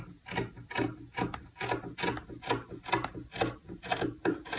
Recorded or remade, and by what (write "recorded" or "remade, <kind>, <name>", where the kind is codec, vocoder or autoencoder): recorded